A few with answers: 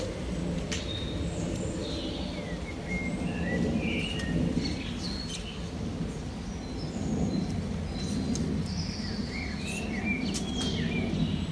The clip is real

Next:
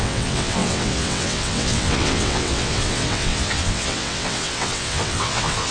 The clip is fake